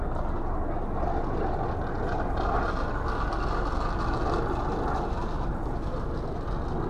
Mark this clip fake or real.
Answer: real